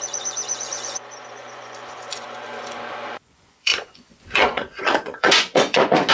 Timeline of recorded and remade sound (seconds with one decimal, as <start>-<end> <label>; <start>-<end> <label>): 0.0-6.1 remade